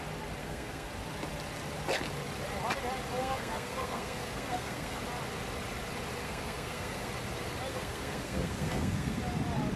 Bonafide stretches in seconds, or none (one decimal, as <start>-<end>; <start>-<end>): 0.0-0.4; 0.9-3.2; 5.0-6.2; 7.1-7.7; 9.2-9.8